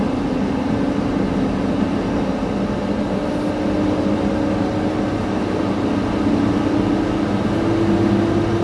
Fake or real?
real